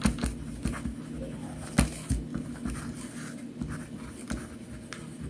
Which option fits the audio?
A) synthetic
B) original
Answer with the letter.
B